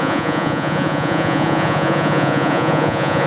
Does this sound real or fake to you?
fake